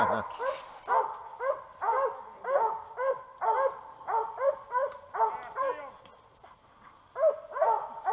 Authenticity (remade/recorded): recorded